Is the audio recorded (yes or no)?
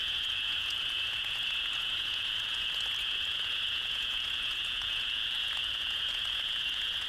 no